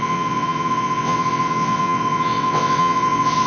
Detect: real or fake fake